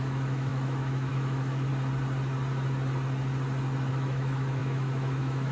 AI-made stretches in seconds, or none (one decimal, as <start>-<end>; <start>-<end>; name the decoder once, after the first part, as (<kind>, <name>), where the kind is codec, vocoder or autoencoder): 0.0-1.7 (autoencoder, DAC-VAE); 3.9-5.5